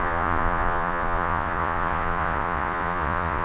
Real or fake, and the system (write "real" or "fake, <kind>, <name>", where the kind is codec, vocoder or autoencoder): fake, vocoder, Vocos